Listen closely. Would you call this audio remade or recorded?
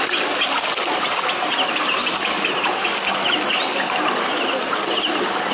recorded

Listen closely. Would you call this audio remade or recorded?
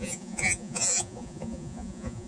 remade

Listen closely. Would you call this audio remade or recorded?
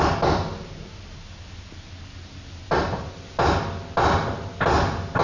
recorded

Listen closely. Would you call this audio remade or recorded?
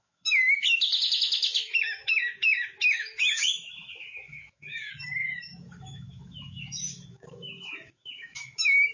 remade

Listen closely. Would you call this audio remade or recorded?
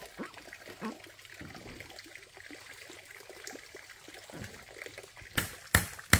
recorded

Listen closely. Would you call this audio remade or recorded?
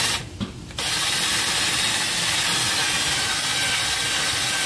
recorded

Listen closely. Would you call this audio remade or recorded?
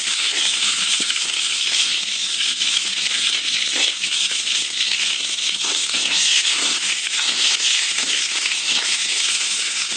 remade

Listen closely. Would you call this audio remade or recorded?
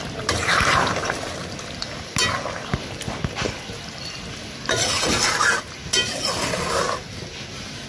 recorded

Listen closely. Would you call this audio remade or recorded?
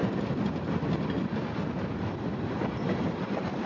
recorded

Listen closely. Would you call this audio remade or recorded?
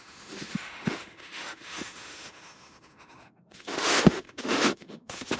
remade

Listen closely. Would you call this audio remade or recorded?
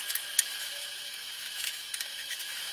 remade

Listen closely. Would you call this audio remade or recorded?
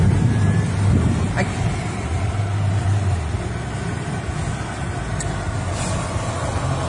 recorded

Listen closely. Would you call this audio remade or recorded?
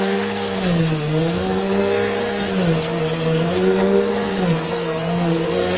remade